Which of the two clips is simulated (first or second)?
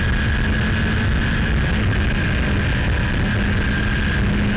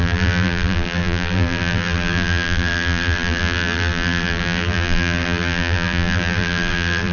second